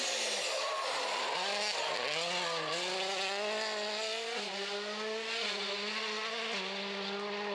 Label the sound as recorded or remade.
recorded